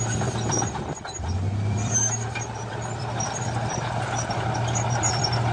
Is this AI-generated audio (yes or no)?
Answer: yes